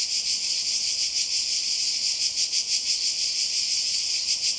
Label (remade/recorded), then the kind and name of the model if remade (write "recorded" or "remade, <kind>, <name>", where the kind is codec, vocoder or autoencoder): recorded